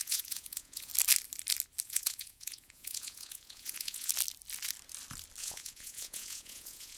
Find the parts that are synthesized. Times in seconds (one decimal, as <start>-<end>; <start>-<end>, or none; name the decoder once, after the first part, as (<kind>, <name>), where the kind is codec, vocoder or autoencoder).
0.0-0.9 (vocoder, Vocos); 1.8-4.1; 5.4-7.0